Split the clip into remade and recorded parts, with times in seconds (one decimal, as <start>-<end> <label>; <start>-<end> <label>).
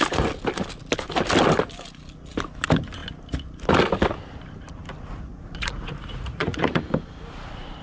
0.0-5.3 recorded; 5.3-6.8 remade; 6.8-7.8 recorded